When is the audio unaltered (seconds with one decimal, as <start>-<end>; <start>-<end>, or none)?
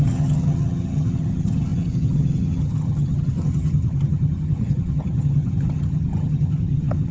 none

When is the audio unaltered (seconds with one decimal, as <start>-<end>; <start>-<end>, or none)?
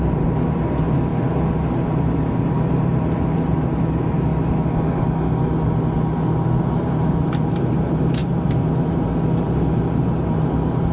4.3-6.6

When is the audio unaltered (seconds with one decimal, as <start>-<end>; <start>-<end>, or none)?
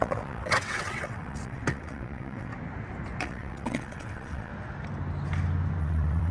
2.5-3.2; 4.5-5.8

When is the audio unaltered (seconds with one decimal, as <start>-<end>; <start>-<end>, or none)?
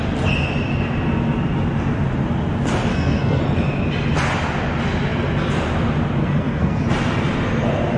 0.0-2.9; 3.4-6.2; 6.8-8.0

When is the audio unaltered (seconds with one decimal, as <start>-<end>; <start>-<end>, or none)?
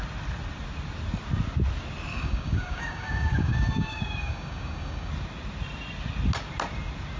0.0-2.1; 5.1-7.2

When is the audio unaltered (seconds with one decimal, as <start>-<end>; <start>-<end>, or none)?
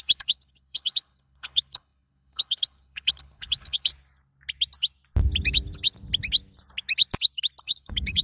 3.9-7.6